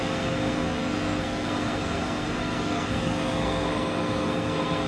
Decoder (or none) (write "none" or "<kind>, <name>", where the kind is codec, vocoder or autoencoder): codec, SNAC